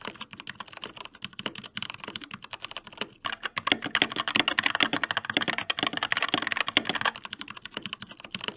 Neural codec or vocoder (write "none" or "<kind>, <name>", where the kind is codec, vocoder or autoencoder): none